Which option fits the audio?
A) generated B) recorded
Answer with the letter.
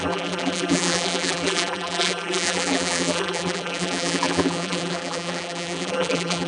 A